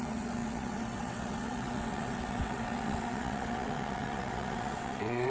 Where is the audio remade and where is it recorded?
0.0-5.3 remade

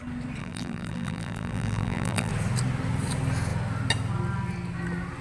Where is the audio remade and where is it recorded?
0.0-0.4 recorded; 0.4-2.3 remade; 2.3-5.2 recorded